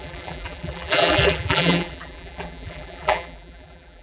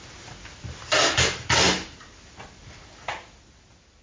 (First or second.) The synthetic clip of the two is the first